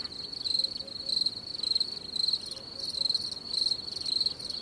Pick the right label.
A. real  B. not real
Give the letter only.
A